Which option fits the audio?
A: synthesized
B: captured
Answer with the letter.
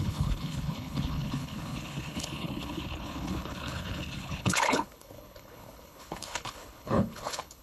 A